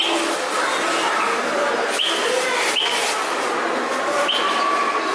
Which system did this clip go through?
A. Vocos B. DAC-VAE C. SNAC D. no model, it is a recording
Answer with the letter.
D